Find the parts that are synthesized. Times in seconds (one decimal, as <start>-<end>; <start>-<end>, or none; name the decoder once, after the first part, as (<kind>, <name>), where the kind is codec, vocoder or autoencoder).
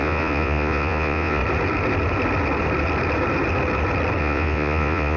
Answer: 0.0-1.4 (vocoder, Vocos); 4.2-5.2